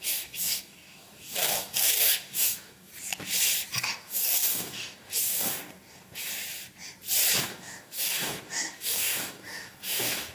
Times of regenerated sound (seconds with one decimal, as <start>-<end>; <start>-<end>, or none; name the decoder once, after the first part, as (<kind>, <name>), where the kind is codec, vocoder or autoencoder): 0.0-2.9 (codec, DAC); 3.8-6.3; 7.4-10.3

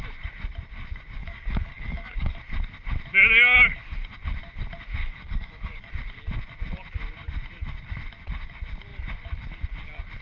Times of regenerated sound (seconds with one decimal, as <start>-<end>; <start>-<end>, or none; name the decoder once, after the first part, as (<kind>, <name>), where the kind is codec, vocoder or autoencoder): 1.2-2.4 (codec, DAC); 5.0-5.9

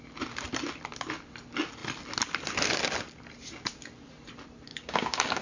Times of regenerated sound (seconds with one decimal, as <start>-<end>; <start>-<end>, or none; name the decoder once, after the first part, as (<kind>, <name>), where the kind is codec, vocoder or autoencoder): 4.7-5.4 (codec, DAC)

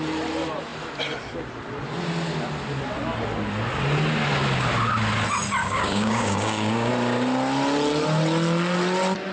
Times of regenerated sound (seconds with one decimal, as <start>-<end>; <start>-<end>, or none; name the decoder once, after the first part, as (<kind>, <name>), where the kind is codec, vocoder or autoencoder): 5.6-6.9 (codec, DAC)

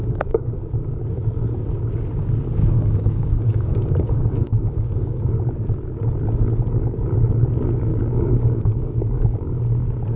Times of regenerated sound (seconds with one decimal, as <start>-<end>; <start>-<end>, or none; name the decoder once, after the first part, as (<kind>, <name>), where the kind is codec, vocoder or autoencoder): 0.0-0.7 (codec, DAC); 2.6-5.2; 7.9-9.5

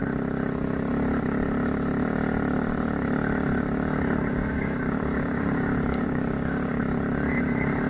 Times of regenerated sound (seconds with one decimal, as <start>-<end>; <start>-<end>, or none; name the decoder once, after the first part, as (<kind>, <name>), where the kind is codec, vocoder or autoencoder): 4.3-6.8 (codec, DAC)

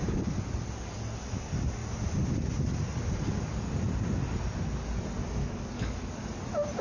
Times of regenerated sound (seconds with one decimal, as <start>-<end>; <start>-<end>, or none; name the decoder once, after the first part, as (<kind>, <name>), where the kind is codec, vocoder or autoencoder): 5.4-6.2 (codec, DAC)

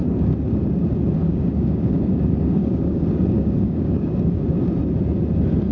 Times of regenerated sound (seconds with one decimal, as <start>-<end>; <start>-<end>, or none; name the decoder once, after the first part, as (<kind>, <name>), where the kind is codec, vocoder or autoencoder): 1.2-4.6 (codec, DAC)